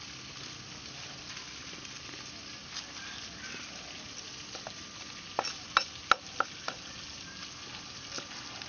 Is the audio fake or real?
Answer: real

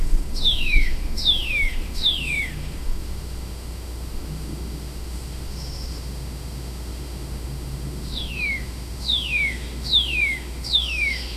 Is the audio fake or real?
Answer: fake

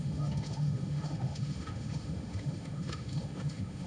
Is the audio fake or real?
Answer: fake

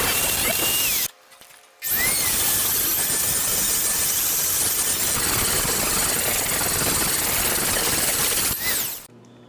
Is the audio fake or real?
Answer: real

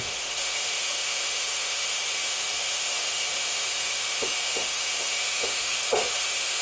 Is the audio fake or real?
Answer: fake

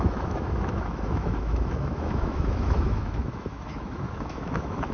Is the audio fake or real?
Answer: fake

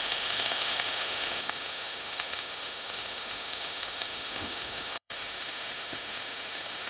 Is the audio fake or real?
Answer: fake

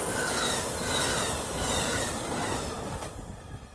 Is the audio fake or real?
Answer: real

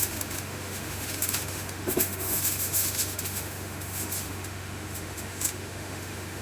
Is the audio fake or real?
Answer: fake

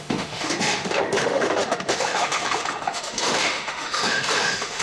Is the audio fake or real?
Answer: fake